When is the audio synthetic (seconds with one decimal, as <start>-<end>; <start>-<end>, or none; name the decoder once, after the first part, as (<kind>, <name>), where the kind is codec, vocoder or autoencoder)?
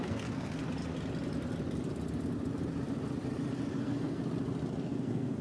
0.0-0.6 (codec, SNAC); 3.8-4.2; 4.8-5.4